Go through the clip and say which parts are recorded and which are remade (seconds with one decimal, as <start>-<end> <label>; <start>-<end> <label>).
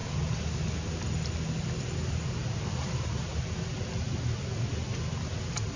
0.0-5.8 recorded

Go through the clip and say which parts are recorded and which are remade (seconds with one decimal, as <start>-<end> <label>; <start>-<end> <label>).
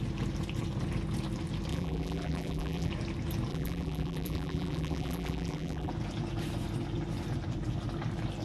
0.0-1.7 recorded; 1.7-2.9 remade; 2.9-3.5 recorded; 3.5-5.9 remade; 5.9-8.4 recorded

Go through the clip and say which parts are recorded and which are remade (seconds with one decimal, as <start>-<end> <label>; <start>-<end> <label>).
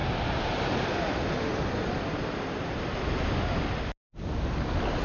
0.0-5.0 recorded